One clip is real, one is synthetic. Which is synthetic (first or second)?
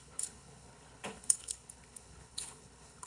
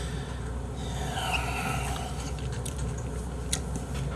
first